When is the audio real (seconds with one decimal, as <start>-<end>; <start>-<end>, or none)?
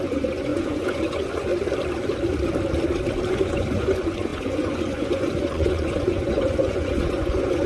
1.5-3.3